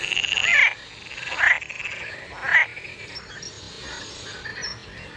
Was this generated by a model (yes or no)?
no